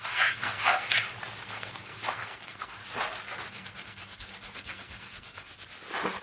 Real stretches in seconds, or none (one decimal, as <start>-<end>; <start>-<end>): 0.9-1.4; 2.8-3.5; 5.5-6.2